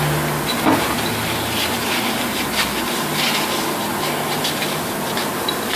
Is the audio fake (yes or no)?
no